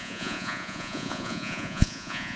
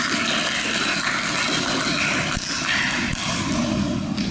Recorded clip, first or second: second